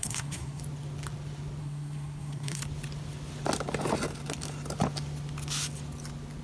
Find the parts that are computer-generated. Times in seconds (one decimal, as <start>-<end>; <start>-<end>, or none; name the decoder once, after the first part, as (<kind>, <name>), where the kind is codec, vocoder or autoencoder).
0.0-0.6 (codec, SNAC); 1.6-2.6